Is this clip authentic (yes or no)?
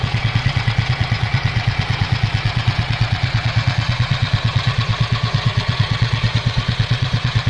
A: no